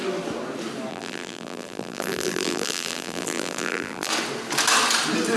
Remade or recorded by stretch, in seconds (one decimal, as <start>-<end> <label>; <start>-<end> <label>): 0.0-0.9 recorded; 0.9-4.1 remade; 4.1-5.4 recorded